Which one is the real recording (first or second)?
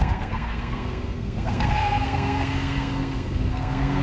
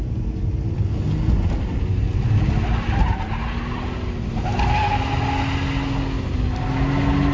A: second